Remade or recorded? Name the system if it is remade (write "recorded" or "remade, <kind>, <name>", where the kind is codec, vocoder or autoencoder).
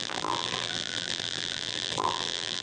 remade, vocoder, BigVGAN v2